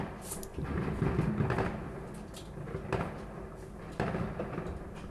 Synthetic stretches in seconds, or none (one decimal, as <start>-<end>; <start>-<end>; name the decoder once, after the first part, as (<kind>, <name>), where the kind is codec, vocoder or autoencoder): 0.5-1.3 (vocoder, BigVGAN v2)